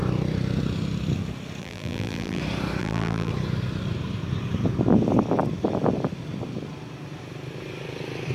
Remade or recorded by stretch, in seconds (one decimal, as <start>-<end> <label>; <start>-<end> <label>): 0.0-1.6 recorded; 1.6-2.4 remade; 2.4-2.8 recorded; 2.8-3.3 remade; 3.3-8.3 recorded